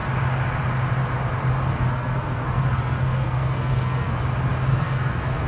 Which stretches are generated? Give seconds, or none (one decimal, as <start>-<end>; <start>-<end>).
1.7-4.2; 4.7-5.5